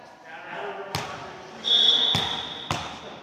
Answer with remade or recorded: recorded